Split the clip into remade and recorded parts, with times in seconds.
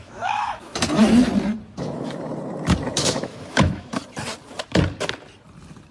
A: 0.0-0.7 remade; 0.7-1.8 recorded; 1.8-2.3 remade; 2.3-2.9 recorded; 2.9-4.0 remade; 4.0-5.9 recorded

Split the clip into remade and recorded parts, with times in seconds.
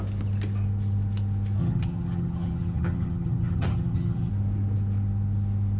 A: 0.0-1.6 recorded; 1.6-4.3 remade; 4.3-5.8 recorded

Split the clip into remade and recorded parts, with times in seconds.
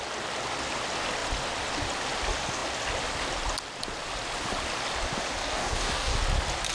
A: 0.0-5.4 recorded; 5.4-6.2 remade; 6.2-6.7 recorded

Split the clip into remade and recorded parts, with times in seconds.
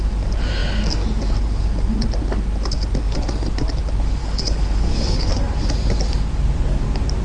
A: 0.0-4.2 recorded; 4.2-5.3 remade; 5.3-7.2 recorded